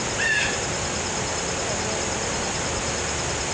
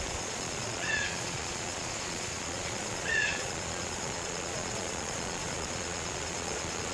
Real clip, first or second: first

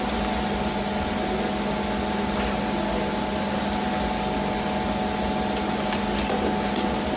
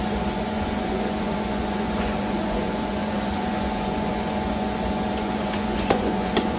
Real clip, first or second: first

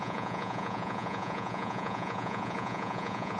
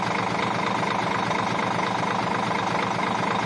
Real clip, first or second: second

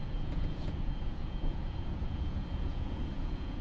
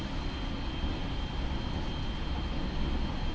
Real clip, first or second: second